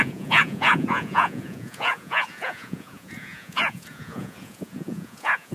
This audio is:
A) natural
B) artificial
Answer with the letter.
B